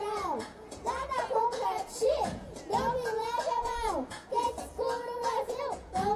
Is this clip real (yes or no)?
no